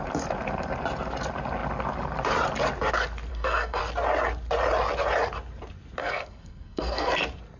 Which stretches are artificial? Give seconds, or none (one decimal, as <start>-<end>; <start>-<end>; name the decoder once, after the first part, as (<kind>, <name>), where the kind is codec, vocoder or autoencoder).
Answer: 3.3-3.8 (codec, SNAC); 6.0-7.1